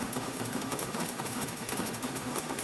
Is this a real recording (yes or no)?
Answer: no